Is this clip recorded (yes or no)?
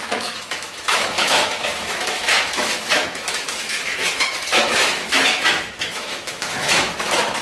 no